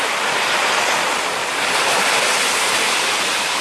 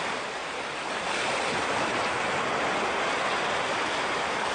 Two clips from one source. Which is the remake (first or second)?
first